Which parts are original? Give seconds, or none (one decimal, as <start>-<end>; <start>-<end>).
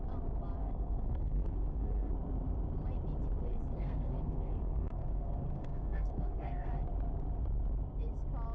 0.0-0.6; 2.1-3.5; 6.7-8.5